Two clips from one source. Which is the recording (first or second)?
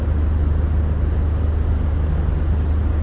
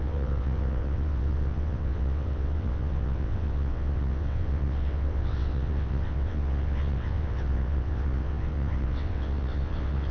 first